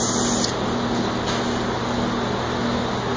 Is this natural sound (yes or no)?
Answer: yes